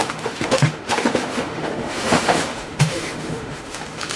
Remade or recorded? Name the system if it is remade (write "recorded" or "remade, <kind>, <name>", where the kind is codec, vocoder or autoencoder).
remade, autoencoder, DAC-VAE